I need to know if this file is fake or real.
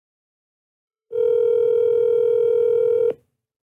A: fake